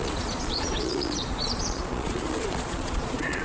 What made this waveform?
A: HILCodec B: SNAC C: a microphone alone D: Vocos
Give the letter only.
D